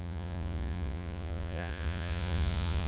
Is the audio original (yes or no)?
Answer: no